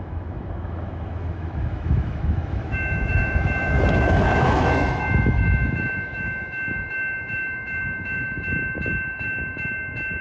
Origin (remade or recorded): remade